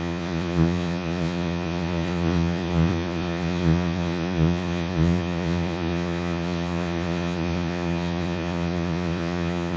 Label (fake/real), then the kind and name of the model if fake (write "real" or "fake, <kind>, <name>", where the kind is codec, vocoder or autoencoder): fake, vocoder, Vocos